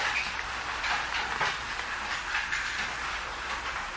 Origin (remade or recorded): recorded